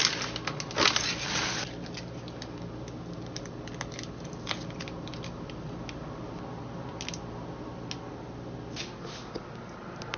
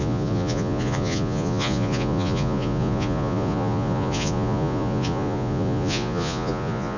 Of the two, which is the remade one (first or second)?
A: second